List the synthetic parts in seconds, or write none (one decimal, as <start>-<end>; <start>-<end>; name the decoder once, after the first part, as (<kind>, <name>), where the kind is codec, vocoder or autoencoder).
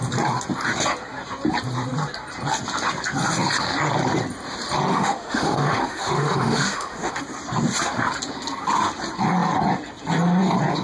4.9-7.1 (autoencoder, DAC-VAE)